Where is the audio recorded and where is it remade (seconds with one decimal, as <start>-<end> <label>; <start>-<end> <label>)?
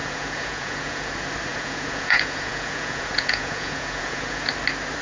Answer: 0.0-1.1 remade; 1.1-1.5 recorded; 1.5-4.5 remade; 4.5-5.0 recorded